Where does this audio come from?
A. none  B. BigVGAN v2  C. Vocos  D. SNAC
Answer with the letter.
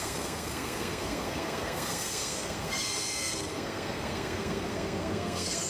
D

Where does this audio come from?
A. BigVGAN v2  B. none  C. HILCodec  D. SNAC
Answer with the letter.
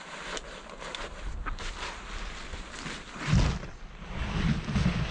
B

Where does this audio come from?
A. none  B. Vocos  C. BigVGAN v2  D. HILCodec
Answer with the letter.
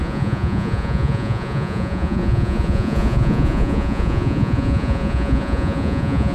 B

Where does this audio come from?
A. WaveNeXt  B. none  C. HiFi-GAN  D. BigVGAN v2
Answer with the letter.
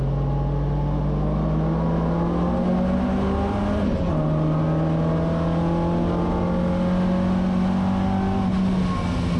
B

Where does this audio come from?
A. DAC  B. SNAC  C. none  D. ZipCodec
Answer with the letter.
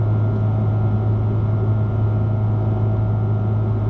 C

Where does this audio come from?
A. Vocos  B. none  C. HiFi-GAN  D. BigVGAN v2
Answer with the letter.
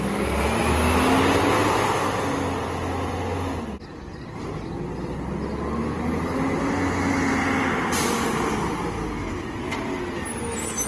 B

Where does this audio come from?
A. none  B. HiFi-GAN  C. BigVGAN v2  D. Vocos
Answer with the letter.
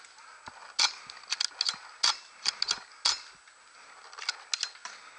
A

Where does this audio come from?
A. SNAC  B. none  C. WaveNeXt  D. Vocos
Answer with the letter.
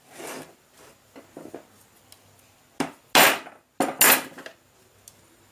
B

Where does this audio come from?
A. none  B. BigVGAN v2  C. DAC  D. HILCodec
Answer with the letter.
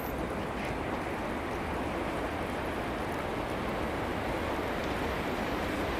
A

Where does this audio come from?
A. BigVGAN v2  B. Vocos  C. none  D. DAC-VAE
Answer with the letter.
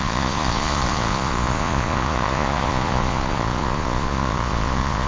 B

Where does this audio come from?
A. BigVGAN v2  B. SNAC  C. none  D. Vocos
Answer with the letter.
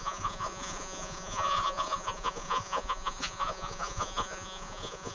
D